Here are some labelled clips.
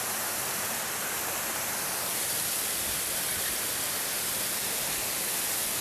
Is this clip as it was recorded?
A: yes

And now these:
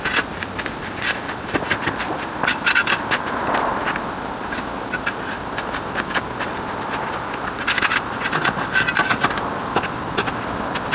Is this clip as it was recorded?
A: yes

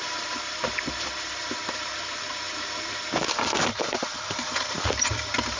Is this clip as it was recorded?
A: no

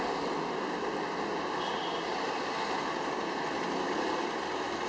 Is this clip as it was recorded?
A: yes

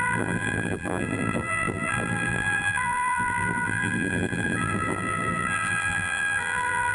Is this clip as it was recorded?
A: no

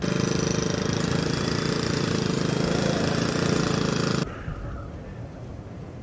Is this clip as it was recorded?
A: yes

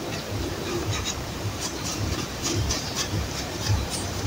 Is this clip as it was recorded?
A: no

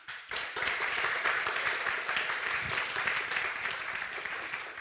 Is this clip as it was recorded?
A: no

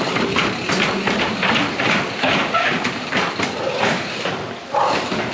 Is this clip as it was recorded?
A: no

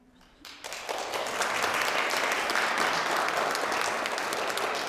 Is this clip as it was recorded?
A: yes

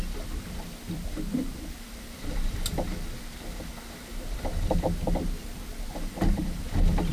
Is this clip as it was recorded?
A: no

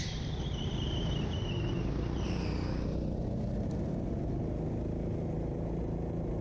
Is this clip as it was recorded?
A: yes